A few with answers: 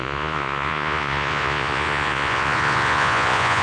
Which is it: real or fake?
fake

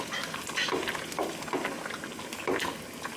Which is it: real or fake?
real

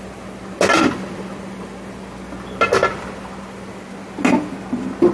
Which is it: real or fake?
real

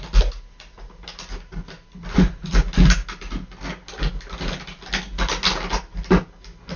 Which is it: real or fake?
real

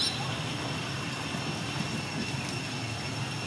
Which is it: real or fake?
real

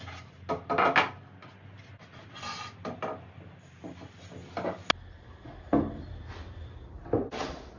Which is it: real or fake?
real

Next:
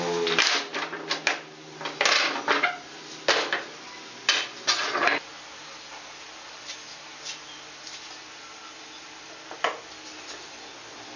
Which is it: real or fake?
real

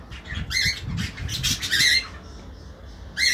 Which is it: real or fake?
real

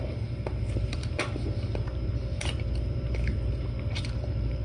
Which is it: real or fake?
fake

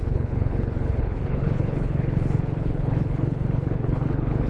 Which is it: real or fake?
fake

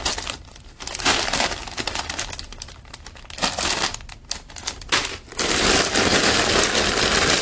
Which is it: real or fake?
real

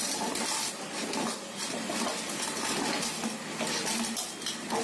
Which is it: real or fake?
real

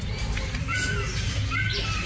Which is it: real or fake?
real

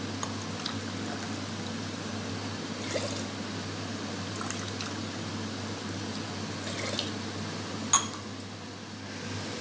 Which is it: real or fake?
real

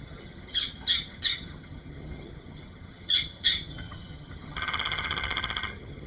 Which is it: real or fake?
fake